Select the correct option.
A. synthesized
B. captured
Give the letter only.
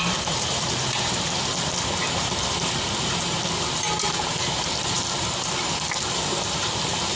A